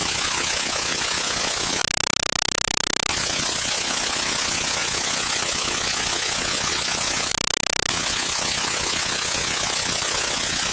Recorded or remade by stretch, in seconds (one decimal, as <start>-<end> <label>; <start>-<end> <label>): 0.0-1.8 remade; 1.8-3.1 recorded; 3.1-7.3 remade; 7.3-7.9 recorded; 7.9-10.7 remade